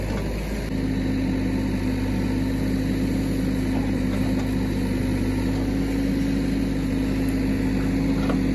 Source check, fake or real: real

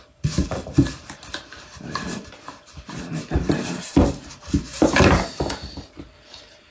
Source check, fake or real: fake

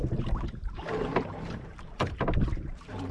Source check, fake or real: fake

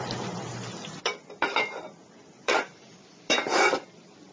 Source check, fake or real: fake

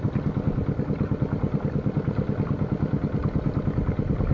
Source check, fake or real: real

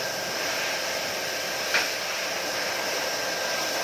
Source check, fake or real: real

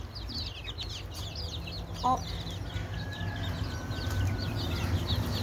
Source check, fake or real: real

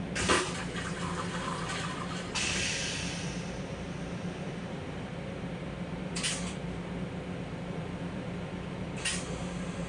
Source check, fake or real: fake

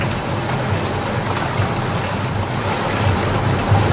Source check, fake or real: real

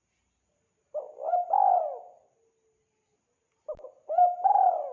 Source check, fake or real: real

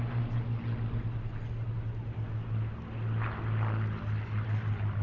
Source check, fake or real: real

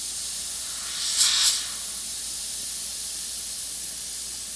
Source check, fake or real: real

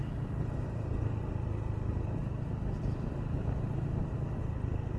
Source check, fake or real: real